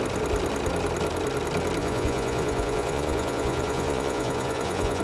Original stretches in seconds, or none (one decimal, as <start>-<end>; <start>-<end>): 0.0-1.8

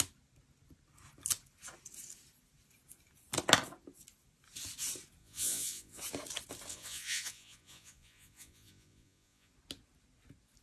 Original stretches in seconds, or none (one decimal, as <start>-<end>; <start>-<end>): 0.0-5.2; 6.0-6.7; 9.5-10.6

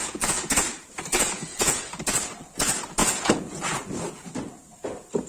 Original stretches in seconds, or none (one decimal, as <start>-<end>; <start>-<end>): 1.9-3.0; 3.8-5.3

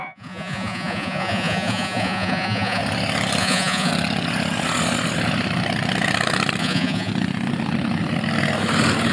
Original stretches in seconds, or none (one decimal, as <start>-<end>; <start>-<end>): 2.8-3.4; 3.9-6.6; 7.1-9.1

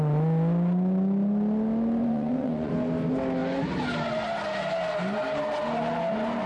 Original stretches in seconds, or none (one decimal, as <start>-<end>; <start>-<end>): 0.0-2.0; 2.7-6.5

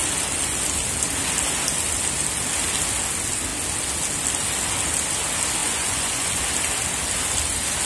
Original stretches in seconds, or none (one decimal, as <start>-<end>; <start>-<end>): 0.0-5.6; 6.4-7.9